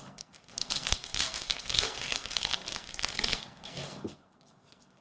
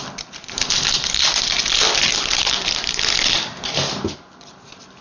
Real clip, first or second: second